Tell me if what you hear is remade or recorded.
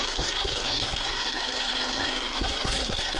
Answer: remade